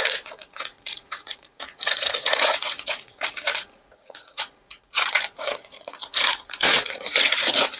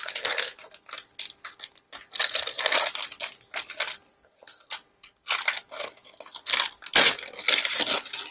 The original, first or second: second